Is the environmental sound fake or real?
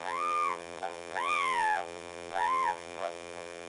fake